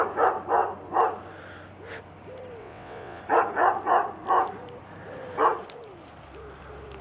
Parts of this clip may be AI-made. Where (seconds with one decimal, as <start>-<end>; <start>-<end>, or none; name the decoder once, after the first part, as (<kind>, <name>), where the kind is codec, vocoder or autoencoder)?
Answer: 2.6-3.2 (vocoder, WaveNeXt)

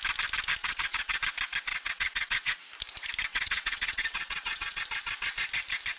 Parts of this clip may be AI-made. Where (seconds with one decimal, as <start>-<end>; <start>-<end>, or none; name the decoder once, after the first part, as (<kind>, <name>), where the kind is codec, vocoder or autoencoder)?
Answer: 0.6-1.2 (vocoder, WaveNeXt); 1.7-2.6; 3.3-4.8

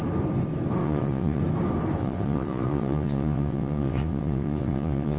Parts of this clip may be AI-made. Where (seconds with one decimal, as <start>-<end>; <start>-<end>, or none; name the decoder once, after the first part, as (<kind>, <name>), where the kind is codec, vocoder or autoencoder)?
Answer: 0.8-1.4 (vocoder, WaveNeXt); 2.0-5.2

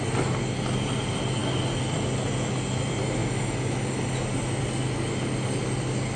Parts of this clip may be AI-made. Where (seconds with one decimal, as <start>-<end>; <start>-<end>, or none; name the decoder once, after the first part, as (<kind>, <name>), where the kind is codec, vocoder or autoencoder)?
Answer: none

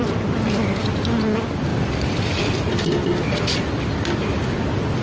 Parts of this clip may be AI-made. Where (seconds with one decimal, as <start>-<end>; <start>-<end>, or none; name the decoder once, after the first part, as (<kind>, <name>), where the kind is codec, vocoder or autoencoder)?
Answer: none